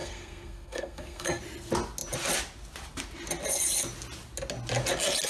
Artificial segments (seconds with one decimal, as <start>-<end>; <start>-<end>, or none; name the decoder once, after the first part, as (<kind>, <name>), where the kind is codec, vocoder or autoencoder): 0.0-1.4 (codec, SNAC)